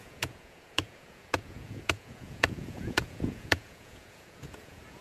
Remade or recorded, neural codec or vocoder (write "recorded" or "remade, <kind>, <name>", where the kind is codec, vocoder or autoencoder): remade, vocoder, Vocos